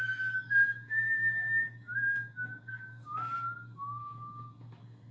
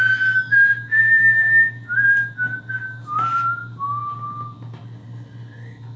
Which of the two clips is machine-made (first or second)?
first